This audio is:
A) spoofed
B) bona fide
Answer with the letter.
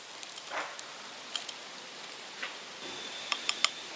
B